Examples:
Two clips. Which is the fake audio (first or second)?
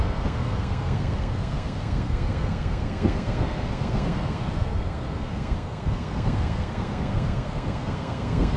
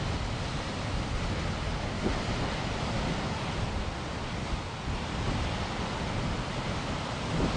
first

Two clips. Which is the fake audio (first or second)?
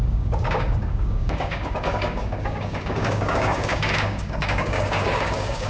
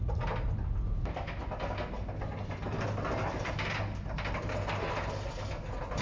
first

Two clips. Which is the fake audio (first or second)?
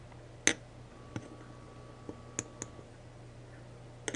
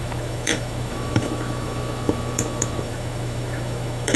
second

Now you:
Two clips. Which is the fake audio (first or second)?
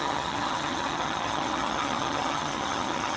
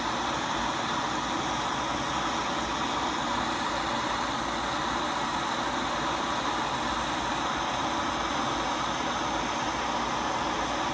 first